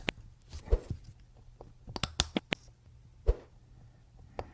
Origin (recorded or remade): recorded